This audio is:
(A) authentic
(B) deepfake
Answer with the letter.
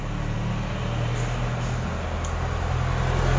A